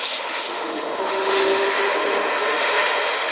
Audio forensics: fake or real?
fake